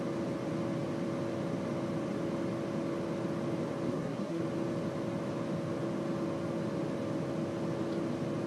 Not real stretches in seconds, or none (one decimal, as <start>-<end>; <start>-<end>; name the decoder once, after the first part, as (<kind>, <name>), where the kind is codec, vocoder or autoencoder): 3.9-4.4 (codec, SNAC)